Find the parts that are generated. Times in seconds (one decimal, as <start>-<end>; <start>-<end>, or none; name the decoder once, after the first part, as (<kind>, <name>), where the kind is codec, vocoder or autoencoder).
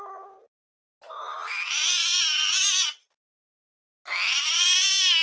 none